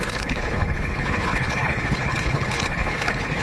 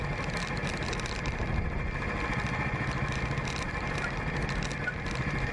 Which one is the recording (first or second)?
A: second